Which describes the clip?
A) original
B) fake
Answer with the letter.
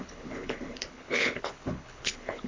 B